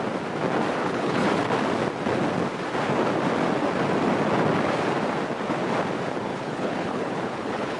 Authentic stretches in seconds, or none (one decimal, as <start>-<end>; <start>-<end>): 0.0-0.8; 1.3-6.3